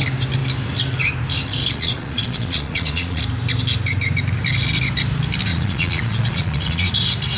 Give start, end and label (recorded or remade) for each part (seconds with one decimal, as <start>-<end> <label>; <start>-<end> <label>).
0.0-1.6 recorded; 1.6-3.2 remade; 3.2-5.5 recorded; 5.5-6.9 remade; 6.9-7.4 recorded